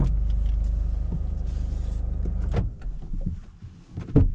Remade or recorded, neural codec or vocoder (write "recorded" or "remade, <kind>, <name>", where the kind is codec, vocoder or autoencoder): recorded